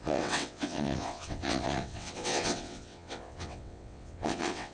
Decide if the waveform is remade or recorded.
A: remade